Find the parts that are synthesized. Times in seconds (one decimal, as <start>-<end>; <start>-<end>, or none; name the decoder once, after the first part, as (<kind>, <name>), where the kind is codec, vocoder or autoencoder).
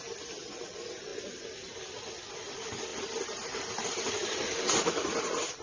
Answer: none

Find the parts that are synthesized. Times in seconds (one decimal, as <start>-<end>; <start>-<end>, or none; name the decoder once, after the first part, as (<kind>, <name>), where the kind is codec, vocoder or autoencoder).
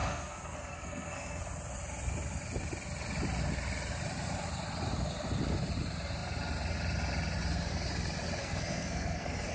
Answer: 0.0-1.4 (codec, SNAC); 8.4-9.5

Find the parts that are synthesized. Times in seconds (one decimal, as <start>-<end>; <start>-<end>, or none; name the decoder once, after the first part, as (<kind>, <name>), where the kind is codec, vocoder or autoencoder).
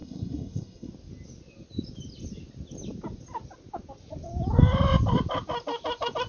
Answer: 0.0-0.9 (codec, SNAC)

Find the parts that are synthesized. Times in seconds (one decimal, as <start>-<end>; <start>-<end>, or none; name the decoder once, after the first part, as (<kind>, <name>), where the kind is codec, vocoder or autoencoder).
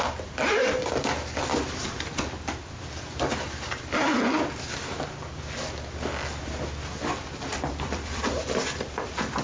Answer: 7.5-9.4 (vocoder, BigVGAN v2)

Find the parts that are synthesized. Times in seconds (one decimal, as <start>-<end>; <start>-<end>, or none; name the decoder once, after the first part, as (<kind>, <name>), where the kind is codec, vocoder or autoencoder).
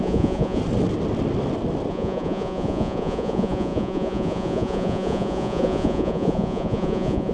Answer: 0.0-0.6 (vocoder, Vocos); 1.9-7.3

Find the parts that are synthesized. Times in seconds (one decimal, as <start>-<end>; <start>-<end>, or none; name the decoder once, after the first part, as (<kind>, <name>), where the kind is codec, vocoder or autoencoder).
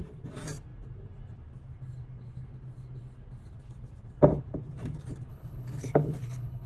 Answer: 5.3-6.7 (codec, HILCodec)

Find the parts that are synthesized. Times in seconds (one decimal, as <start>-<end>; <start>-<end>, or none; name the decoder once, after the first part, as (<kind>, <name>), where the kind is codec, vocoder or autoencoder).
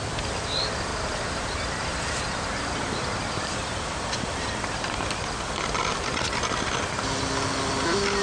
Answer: 0.9-4.7 (vocoder, BigVGAN v2)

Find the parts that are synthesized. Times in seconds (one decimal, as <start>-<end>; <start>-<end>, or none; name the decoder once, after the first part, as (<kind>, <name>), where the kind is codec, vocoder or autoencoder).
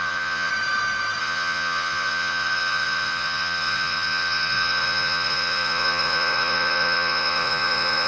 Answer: 0.0-0.5 (vocoder, Vocos); 1.2-8.1